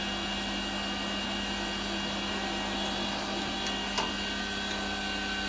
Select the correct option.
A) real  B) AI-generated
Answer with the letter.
A